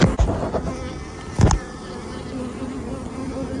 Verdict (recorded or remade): recorded